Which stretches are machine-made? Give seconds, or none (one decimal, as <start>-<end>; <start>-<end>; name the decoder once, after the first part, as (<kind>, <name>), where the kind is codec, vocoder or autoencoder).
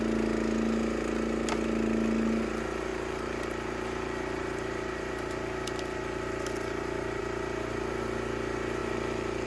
2.9-7.2 (vocoder, BigVGAN v2); 8.8-9.5